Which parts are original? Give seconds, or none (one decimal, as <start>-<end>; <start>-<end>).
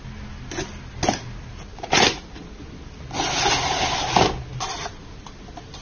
0.0-5.8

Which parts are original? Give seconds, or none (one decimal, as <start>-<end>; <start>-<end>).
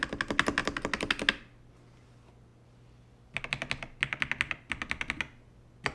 0.0-5.9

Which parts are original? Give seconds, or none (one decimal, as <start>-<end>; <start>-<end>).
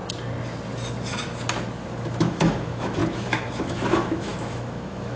0.0-1.8